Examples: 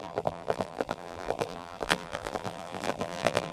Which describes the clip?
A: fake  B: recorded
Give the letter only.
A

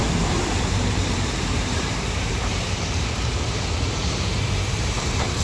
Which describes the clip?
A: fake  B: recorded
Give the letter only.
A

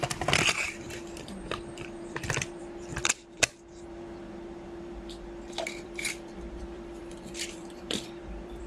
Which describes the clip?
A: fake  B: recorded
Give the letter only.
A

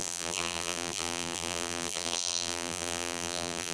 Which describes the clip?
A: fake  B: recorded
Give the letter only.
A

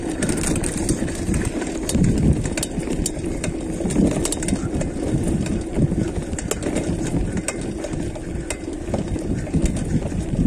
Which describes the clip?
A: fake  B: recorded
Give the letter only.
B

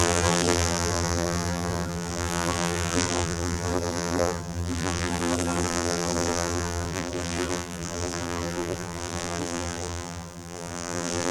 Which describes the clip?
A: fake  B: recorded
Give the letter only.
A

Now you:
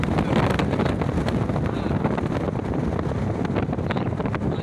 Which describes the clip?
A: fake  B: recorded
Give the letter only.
B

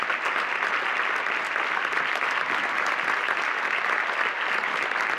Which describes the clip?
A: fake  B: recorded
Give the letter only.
B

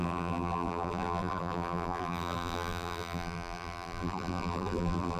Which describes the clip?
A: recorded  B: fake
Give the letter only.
B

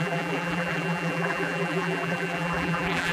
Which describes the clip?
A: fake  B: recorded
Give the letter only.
A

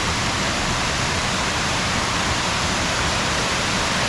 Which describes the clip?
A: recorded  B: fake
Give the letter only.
B